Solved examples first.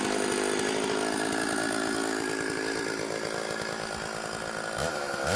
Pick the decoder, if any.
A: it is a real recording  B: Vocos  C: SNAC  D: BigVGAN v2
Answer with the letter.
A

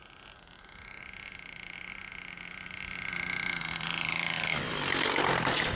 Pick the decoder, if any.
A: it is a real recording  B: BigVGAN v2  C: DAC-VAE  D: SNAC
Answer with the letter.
A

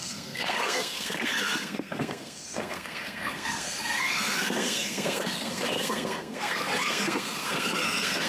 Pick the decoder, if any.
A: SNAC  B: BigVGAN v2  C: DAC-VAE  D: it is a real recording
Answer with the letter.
A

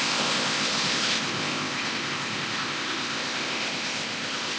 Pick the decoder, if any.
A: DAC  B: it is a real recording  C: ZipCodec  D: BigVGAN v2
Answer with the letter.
C